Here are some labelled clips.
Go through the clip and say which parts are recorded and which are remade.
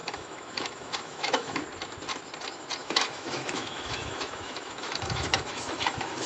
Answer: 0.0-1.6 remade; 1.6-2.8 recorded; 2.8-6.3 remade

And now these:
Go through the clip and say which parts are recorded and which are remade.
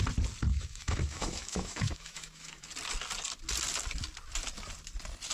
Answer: 0.0-0.5 recorded; 0.5-2.7 remade; 2.7-5.3 recorded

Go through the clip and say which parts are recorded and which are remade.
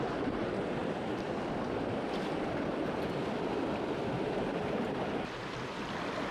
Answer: 0.0-6.3 recorded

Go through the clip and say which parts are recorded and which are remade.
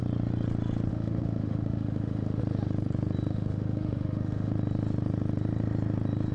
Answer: 0.0-0.9 recorded; 0.9-2.4 remade; 2.4-3.3 recorded; 3.3-4.5 remade; 4.5-6.3 recorded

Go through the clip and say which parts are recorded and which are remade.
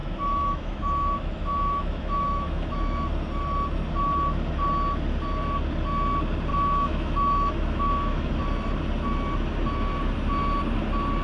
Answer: 0.0-3.1 remade; 3.1-6.5 recorded; 6.5-8.3 remade; 8.3-11.2 recorded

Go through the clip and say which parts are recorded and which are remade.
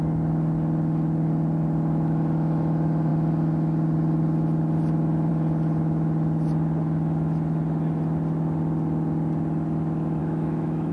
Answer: 0.0-10.2 recorded; 10.2-10.9 remade